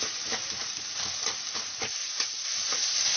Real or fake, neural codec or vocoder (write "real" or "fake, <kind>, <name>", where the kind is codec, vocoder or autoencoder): fake, vocoder, BigVGAN v2